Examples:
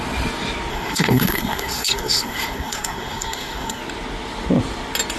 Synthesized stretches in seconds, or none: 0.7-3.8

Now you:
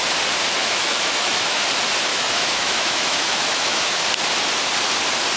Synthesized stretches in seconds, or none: 0.6-1.6; 2.1-4.0

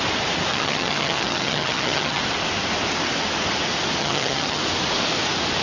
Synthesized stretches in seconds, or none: 0.5-2.2; 4.0-4.6

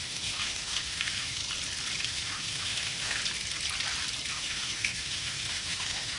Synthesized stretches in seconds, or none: 0.0-1.4; 2.0-3.2; 4.3-6.2

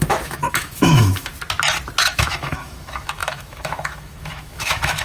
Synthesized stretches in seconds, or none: 0.0-1.3; 2.0-5.0